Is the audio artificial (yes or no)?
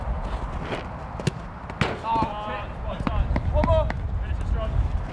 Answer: no